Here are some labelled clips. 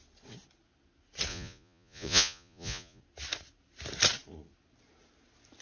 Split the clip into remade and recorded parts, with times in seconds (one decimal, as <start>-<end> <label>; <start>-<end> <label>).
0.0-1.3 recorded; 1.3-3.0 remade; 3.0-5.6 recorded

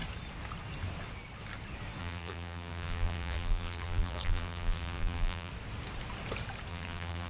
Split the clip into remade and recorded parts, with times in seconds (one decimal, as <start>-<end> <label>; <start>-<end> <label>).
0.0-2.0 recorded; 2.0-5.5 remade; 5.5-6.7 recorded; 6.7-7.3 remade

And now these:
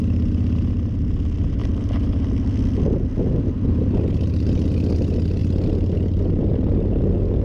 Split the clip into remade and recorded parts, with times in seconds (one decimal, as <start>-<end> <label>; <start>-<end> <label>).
0.0-7.4 recorded

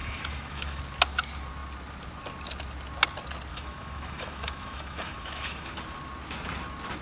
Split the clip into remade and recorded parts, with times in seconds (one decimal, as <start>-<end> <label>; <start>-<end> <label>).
0.0-0.8 remade; 0.8-3.5 recorded; 3.5-5.7 remade; 5.7-7.0 recorded

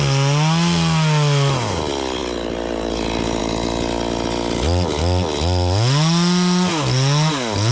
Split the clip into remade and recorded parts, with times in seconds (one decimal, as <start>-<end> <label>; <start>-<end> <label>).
0.0-7.7 recorded

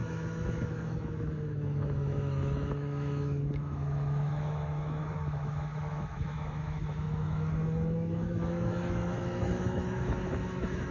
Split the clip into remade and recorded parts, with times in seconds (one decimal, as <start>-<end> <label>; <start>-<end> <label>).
0.0-10.9 remade

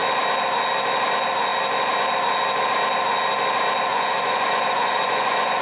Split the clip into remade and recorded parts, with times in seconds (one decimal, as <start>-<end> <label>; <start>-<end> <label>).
0.0-3.9 recorded; 3.9-5.6 remade

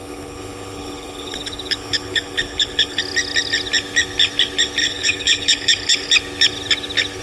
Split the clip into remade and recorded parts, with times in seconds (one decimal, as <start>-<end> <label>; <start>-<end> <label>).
0.0-3.0 remade; 3.0-4.8 recorded; 4.8-6.1 remade; 6.1-7.2 recorded